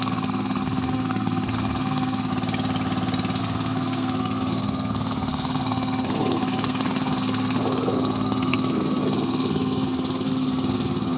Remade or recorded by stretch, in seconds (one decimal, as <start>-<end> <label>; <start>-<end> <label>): 0.0-2.3 remade; 2.3-3.4 recorded; 3.4-11.2 remade